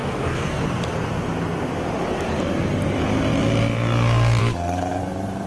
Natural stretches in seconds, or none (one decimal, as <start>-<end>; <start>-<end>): 0.6-4.4; 5.0-5.5